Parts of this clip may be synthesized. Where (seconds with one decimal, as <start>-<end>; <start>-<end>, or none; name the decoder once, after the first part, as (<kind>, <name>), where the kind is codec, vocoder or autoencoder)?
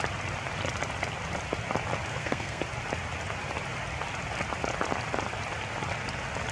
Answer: 2.1-2.6 (codec, SNAC)